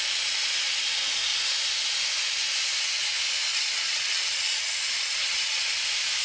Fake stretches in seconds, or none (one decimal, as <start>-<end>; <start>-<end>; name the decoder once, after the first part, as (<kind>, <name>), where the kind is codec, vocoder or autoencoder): 3.5-5.8 (vocoder, Vocos)